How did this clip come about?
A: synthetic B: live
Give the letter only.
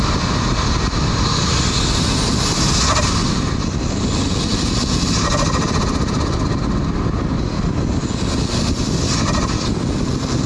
B